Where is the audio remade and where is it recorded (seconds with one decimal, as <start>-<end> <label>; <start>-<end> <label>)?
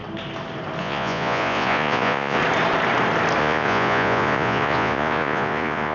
0.0-0.8 recorded; 0.8-2.4 remade; 2.4-3.4 recorded; 3.4-5.9 remade